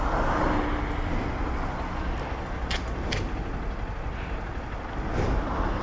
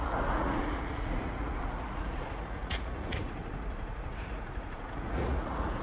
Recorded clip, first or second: first